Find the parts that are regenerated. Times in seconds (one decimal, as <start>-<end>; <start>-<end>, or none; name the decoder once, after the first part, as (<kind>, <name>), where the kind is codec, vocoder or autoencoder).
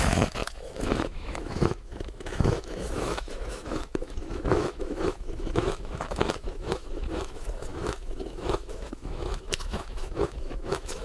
0.0-11.0 (autoencoder, DAC-VAE)